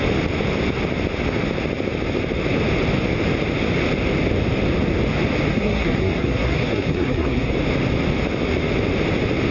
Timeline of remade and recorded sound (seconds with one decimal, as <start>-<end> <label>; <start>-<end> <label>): 0.0-5.5 recorded; 5.5-7.5 remade; 7.5-9.5 recorded